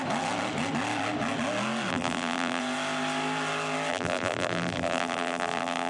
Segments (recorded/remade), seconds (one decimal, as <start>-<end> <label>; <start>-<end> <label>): 0.0-1.9 recorded; 1.9-2.6 remade; 2.6-3.9 recorded; 3.9-5.9 remade